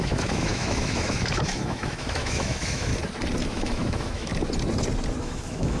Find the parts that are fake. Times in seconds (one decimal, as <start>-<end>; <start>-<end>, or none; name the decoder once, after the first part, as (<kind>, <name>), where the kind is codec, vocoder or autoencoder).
0.0-2.9 (autoencoder, DAC-VAE); 3.4-4.3; 5.2-5.8